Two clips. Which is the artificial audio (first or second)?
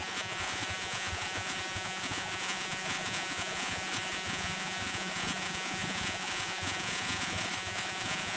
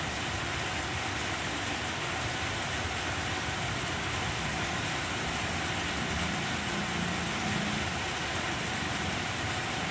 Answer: first